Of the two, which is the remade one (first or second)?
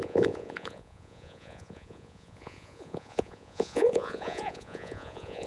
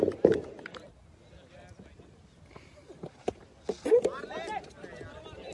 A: first